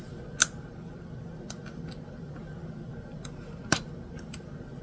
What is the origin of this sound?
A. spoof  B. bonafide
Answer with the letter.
B